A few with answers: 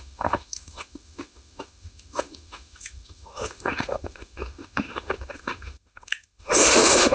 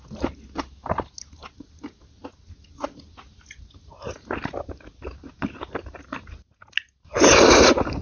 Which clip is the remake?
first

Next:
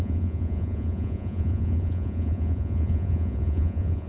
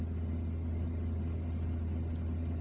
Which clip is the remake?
first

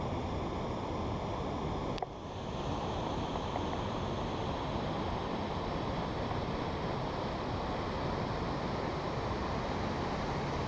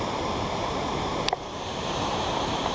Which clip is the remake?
second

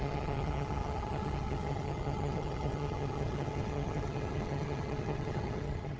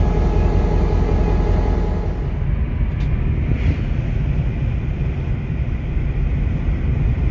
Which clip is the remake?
first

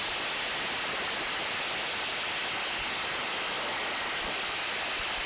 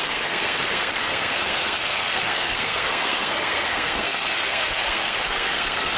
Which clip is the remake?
second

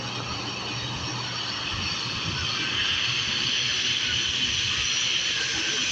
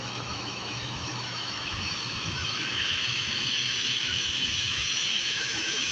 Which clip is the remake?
second